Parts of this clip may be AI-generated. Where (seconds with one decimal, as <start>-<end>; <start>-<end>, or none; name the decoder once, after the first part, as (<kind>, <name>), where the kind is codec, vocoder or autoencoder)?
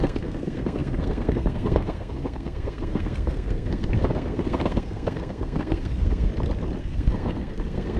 0.0-6.3 (codec, SNAC); 6.8-8.0